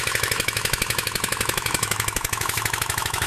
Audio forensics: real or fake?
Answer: fake